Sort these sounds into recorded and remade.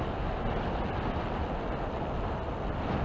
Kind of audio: recorded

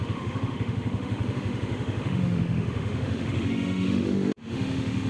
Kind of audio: remade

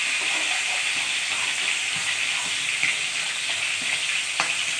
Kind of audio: recorded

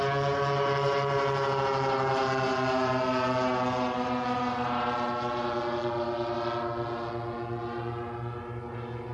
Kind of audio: recorded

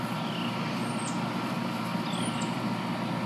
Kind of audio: recorded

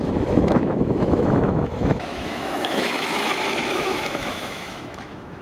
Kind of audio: remade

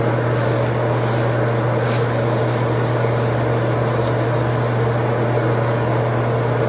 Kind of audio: recorded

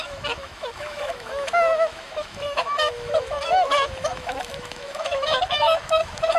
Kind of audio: remade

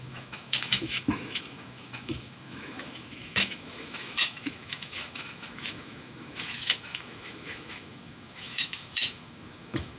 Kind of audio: remade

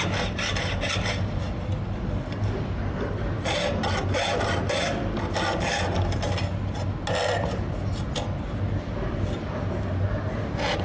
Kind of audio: recorded